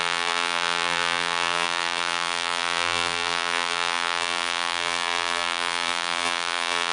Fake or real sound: fake